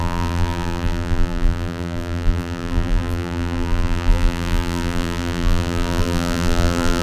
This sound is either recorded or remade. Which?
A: remade